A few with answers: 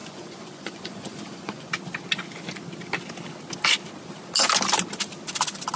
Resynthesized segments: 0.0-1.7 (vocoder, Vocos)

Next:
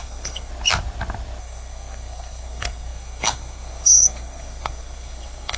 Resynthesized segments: 0.0-0.5 (codec, SNAC); 1.4-5.6